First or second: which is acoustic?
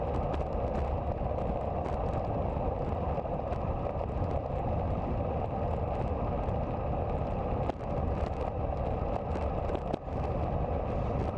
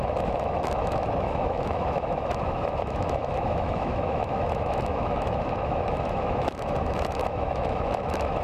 first